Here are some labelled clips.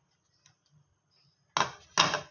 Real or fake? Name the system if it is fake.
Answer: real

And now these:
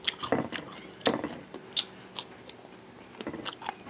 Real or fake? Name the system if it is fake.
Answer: real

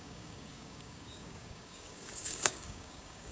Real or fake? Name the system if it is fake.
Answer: fake, codec, DAC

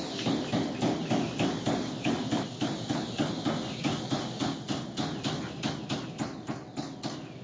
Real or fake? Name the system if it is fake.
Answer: real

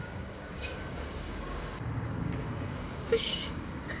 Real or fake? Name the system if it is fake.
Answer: fake, codec, DAC